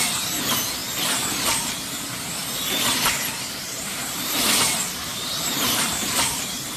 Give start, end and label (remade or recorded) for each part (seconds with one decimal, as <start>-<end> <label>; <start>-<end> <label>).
0.0-0.8 remade; 0.8-1.3 recorded; 1.3-6.8 remade